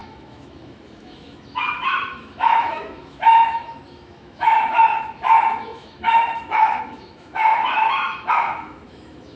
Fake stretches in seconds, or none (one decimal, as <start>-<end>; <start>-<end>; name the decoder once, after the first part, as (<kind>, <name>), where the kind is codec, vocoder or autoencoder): 0.0-9.4 (autoencoder, DAC-VAE)